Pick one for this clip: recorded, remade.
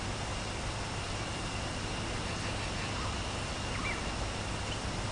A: recorded